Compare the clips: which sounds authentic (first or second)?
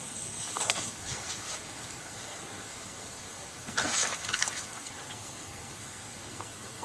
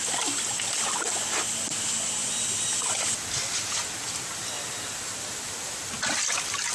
second